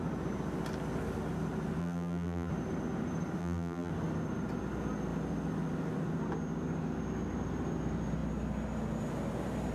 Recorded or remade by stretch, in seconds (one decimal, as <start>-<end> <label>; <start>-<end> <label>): 0.0-1.8 recorded; 1.8-2.5 remade; 2.5-3.4 recorded; 3.4-3.9 remade; 3.9-9.7 recorded